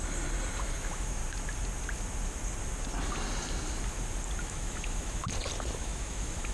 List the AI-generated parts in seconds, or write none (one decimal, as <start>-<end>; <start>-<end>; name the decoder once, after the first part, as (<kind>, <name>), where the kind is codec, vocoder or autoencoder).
0.6-1.2 (autoencoder, DAC-VAE); 4.4-5.2; 5.8-6.5